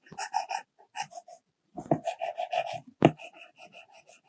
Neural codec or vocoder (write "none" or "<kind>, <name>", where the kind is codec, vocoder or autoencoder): none